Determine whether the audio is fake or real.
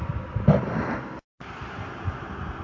real